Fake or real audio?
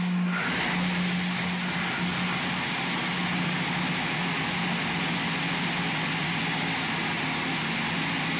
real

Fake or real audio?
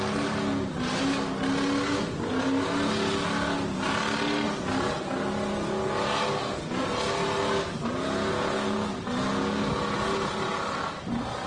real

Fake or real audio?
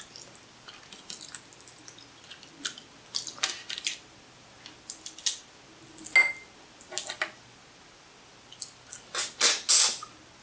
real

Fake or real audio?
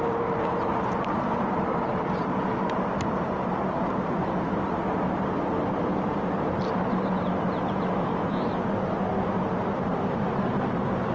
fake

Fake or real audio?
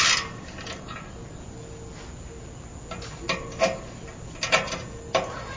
real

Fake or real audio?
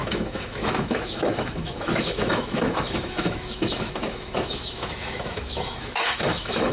fake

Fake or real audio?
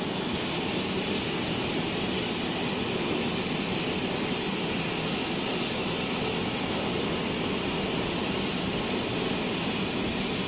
real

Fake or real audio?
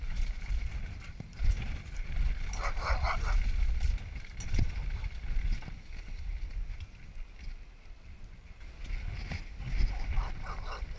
real